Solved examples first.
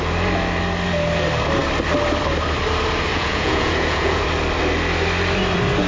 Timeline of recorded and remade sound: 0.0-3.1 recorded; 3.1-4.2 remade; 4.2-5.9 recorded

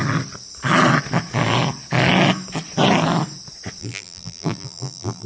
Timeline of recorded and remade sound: 0.0-3.8 recorded; 3.8-5.3 remade